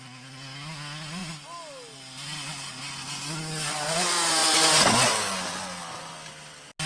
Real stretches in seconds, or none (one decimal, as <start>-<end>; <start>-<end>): 0.0-6.9